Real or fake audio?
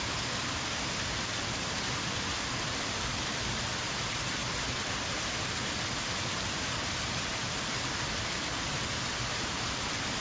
fake